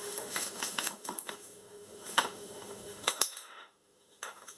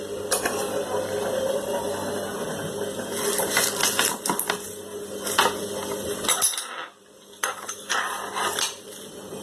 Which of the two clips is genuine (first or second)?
second